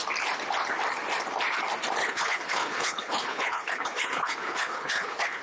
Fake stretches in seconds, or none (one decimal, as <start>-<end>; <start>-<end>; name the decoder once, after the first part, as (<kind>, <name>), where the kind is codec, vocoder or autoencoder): 2.0-5.4 (codec, HILCodec)